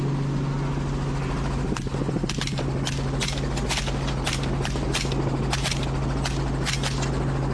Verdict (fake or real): real